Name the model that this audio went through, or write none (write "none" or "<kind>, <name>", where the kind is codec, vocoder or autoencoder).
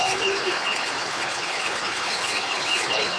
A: codec, HILCodec